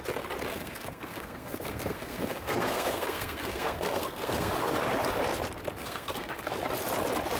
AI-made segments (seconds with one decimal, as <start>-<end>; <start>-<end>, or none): 0.5-4.5; 5.8-6.3